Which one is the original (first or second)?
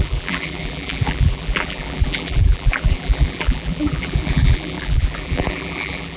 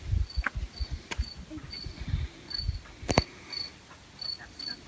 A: second